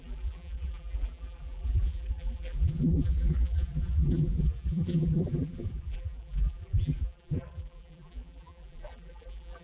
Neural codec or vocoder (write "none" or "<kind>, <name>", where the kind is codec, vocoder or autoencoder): vocoder, BigVGAN v2